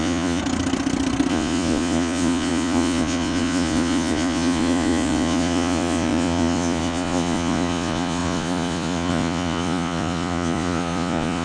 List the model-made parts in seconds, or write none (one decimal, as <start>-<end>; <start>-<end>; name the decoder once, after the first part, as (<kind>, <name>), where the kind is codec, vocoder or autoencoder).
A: 0.0-0.4 (vocoder, Vocos); 1.3-11.4